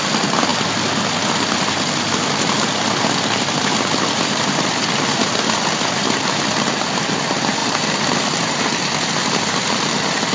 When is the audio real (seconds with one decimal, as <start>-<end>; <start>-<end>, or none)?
0.0-10.3